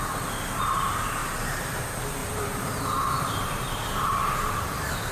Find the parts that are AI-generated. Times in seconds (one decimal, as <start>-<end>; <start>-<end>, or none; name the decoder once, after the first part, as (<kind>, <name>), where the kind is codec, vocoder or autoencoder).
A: 1.2-1.8 (vocoder, BigVGAN v2); 2.2-5.1